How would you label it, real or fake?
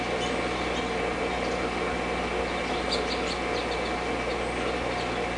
real